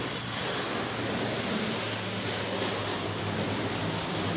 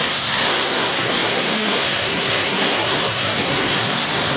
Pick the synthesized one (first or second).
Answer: second